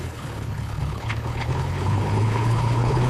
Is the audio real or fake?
fake